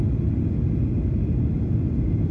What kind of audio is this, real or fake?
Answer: real